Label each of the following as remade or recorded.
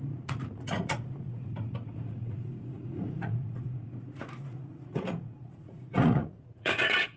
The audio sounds remade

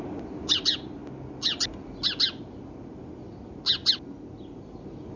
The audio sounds recorded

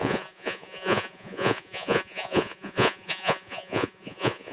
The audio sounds remade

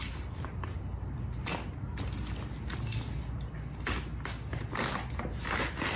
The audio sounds recorded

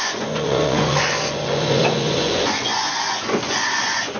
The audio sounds remade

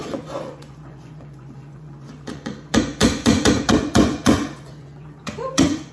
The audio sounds remade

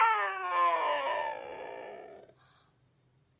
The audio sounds recorded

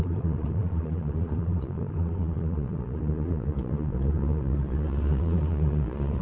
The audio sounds remade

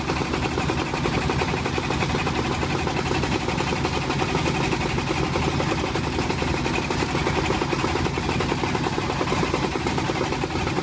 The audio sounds recorded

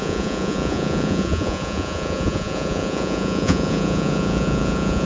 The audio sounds remade